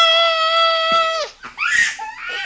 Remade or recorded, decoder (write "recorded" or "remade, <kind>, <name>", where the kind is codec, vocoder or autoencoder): recorded